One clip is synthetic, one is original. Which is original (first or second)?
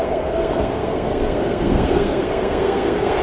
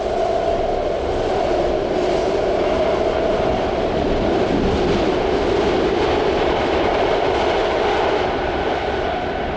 second